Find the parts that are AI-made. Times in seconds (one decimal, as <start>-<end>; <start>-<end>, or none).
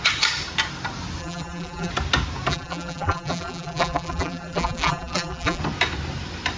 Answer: 1.2-1.9; 2.5-5.6